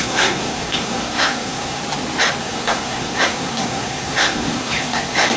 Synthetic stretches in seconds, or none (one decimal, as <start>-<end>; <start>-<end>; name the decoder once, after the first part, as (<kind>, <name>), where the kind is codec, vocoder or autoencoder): 0.0-1.8 (codec, SNAC); 2.4-5.4